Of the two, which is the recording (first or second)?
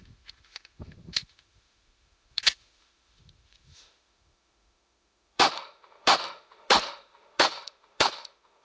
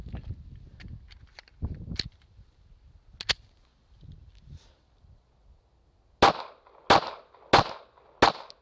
second